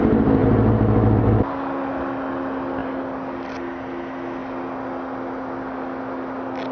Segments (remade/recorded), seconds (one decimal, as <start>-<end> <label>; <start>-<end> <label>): 0.0-6.7 recorded